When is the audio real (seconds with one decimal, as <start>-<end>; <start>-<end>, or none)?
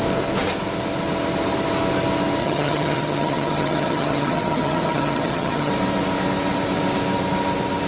0.0-2.4; 5.7-7.9